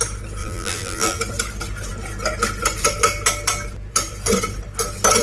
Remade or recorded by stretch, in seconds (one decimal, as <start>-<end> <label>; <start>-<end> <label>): 0.0-0.4 recorded; 0.4-1.2 remade; 1.2-5.2 recorded